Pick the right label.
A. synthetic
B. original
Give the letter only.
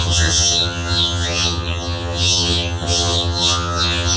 A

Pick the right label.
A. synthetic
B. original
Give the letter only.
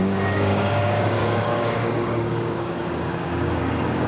A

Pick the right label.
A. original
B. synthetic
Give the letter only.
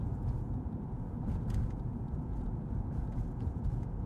B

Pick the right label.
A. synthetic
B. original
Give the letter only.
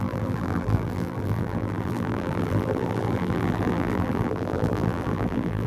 A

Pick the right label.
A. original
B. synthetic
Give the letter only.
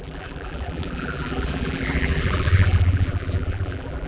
B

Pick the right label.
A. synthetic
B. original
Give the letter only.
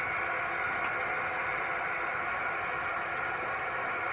B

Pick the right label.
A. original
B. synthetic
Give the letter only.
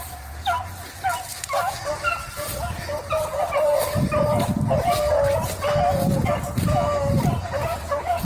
A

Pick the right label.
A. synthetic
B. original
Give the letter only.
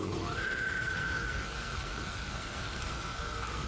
A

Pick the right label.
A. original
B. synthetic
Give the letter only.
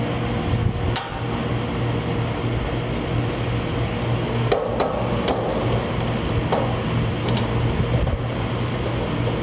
A